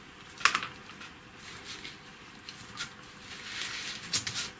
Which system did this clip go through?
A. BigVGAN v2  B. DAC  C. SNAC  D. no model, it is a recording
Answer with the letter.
D